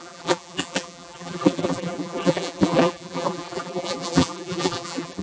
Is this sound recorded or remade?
remade